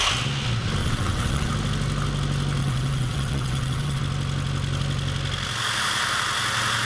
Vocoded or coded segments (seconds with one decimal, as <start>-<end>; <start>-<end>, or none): 0.8-1.5; 2.6-4.0